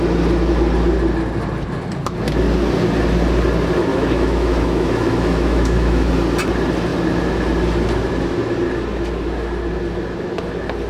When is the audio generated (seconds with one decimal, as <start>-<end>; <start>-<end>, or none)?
3.9-6.1